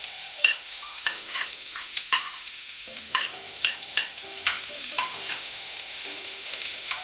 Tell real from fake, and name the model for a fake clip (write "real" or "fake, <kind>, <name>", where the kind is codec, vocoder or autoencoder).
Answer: fake, autoencoder, DAC-VAE